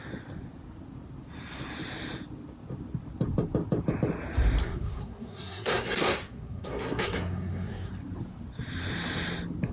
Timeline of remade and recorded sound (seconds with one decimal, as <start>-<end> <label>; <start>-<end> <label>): 0.0-4.6 recorded; 4.6-7.9 remade; 7.9-9.7 recorded